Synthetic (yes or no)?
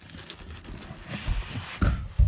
no